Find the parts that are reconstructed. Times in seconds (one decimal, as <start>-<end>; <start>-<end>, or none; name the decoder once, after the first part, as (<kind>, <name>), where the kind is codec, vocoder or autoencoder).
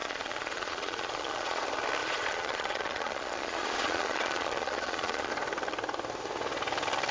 0.0-1.6 (vocoder, Vocos); 2.0-5.3